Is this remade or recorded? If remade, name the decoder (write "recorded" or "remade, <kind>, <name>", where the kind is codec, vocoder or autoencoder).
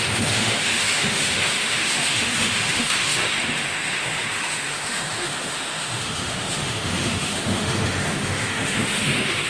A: remade, autoencoder, DAC-VAE